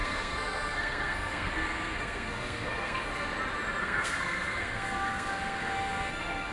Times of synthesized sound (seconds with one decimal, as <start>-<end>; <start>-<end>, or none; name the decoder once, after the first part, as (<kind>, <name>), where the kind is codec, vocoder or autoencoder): 0.0-3.1 (codec, SNAC); 3.8-6.5